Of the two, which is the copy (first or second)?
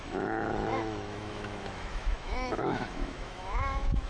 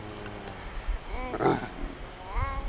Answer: first